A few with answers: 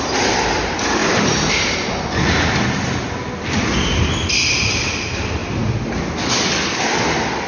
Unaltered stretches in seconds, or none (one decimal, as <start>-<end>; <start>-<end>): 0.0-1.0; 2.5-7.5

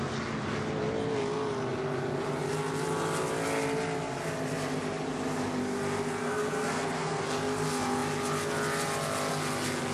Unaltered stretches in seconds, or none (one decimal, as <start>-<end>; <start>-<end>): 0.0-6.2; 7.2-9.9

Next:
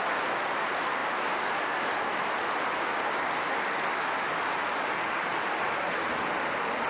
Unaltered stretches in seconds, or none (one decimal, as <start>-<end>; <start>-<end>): 0.0-6.9

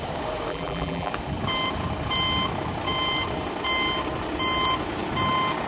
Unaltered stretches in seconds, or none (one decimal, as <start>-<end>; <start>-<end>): 0.0-0.5; 1.1-5.7

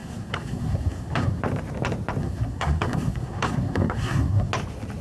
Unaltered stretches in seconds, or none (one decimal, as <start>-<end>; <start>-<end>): 1.4-2.2; 4.5-5.0